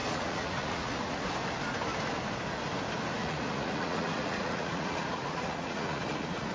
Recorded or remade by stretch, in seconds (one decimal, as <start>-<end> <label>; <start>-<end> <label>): 0.0-1.3 remade; 1.3-3.2 recorded; 3.2-6.5 remade